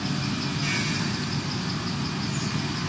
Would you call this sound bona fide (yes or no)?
yes